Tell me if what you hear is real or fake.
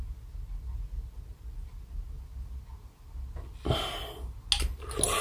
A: real